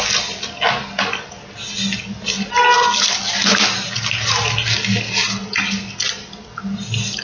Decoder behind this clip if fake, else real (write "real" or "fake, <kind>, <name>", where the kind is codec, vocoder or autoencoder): real